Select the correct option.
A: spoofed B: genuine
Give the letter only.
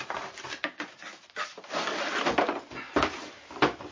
B